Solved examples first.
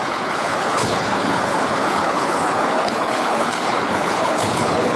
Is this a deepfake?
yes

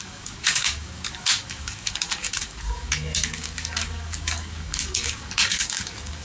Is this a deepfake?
yes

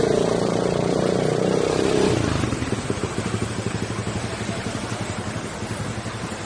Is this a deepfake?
no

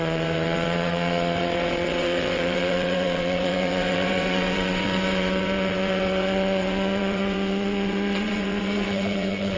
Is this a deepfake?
yes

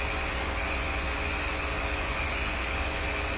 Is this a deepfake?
yes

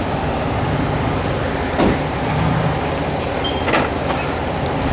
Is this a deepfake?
no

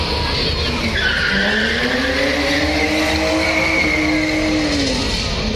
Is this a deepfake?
no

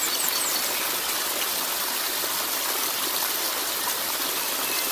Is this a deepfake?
no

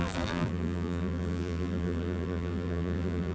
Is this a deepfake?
yes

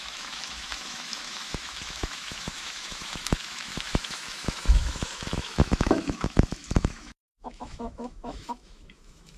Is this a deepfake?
yes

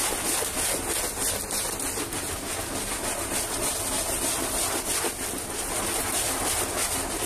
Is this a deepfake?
no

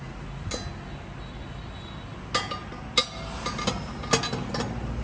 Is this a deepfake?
no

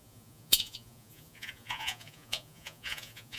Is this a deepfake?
yes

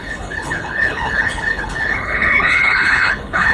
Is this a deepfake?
yes